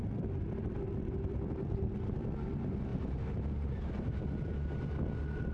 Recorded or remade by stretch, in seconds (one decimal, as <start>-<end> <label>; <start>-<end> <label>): 0.0-2.9 recorded; 2.9-4.2 remade; 4.2-5.5 recorded